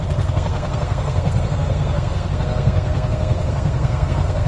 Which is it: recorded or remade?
remade